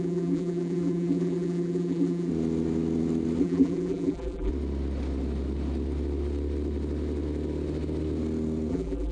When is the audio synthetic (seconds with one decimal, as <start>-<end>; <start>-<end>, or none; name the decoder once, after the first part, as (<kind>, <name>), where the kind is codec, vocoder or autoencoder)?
0.0-2.3 (vocoder, BigVGAN v2); 3.4-4.5; 8.7-9.1